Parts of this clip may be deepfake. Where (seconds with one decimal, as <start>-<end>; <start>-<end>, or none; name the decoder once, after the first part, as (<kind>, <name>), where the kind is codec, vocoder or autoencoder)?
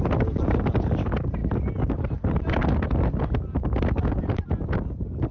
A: none